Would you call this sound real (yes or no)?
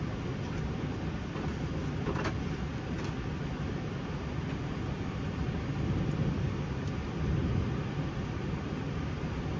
yes